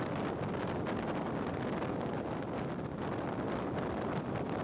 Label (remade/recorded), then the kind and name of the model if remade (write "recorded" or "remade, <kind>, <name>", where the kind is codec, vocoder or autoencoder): recorded